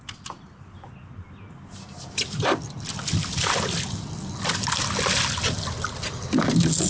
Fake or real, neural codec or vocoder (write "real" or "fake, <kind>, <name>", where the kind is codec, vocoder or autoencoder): real